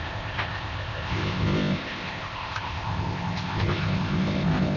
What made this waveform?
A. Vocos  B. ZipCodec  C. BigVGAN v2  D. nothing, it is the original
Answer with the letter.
B